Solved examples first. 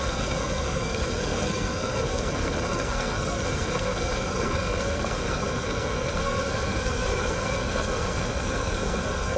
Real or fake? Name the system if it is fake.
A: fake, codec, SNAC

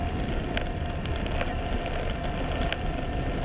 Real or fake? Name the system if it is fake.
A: real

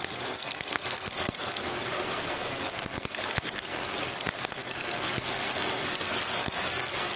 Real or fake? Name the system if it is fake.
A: fake, codec, SNAC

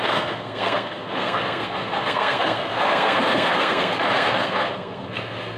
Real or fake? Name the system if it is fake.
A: fake, codec, SNAC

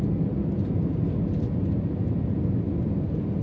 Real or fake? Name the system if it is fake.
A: real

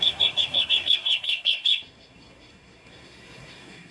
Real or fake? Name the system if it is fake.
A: fake, codec, SNAC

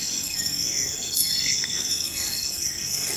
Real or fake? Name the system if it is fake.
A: fake, codec, SNAC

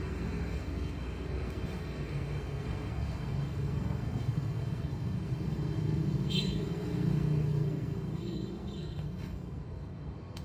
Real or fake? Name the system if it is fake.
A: fake, codec, SNAC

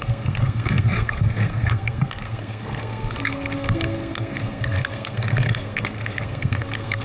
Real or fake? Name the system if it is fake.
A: fake, codec, SNAC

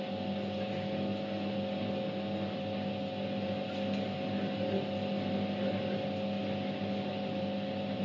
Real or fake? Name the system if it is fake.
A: real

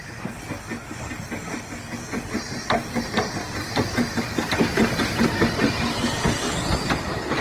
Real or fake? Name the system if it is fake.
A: real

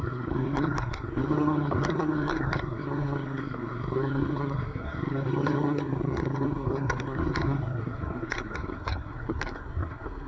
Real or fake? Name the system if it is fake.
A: fake, codec, SNAC